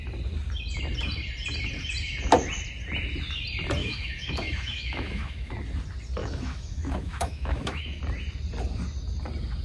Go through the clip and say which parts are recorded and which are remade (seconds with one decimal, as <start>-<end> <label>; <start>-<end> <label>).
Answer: 0.0-3.8 recorded; 3.8-5.5 remade; 5.5-6.2 recorded; 6.2-8.0 remade; 8.0-9.6 recorded